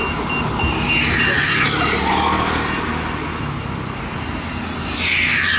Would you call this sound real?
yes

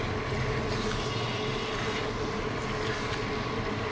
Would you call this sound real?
yes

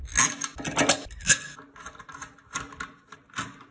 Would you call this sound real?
yes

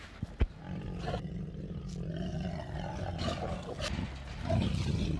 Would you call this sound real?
yes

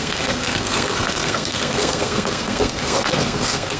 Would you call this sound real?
no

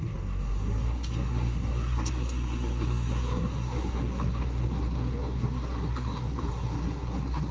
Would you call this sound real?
no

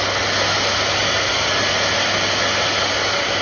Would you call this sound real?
yes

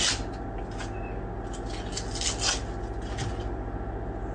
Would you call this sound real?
yes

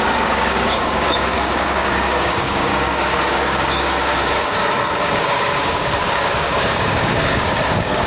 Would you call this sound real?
no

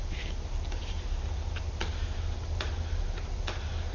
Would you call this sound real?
yes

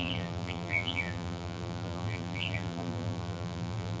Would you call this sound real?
no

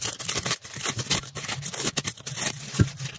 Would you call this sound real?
yes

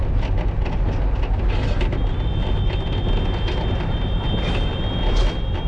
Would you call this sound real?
yes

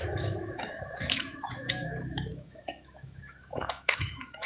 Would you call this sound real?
no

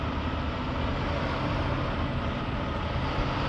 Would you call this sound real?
yes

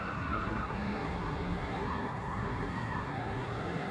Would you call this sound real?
no